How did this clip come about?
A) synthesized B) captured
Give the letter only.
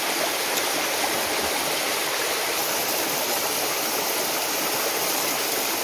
B